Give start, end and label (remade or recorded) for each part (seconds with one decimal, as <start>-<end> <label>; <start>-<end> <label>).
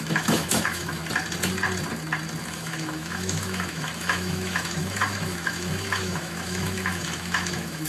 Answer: 0.0-1.0 remade; 1.0-2.5 recorded; 2.5-7.9 remade